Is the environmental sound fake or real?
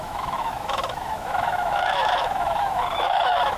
fake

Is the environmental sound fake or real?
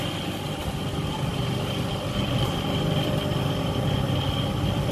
real